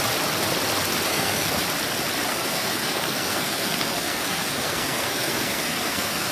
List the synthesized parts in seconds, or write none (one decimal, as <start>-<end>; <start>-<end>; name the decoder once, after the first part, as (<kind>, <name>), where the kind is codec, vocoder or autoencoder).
1.1-1.6 (codec, SNAC); 2.3-6.3